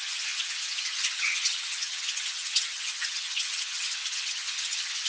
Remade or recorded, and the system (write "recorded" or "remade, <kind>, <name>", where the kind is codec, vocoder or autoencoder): remade, vocoder, HiFi-GAN